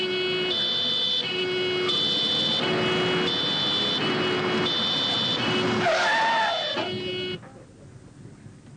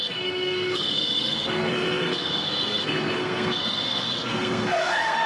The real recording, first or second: first